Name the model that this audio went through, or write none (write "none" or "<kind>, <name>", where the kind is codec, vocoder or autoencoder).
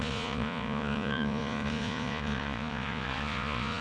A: vocoder, Vocos